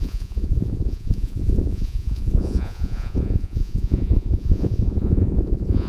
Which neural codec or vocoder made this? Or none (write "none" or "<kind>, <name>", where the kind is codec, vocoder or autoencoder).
vocoder, Vocos